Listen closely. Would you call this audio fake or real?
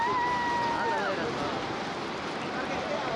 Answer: real